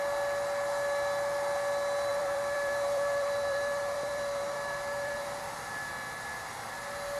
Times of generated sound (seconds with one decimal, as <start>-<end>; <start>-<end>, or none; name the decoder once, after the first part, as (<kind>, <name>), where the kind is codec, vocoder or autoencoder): 2.1-5.9 (vocoder, BigVGAN v2)